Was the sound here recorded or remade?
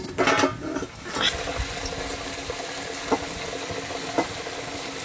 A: recorded